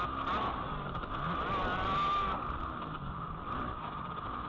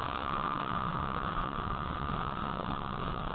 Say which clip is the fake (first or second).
second